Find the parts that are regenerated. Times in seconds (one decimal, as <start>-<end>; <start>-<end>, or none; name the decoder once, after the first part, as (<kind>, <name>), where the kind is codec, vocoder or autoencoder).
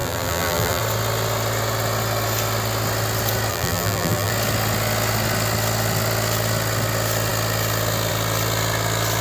0.0-0.8 (vocoder, BigVGAN v2); 3.5-4.3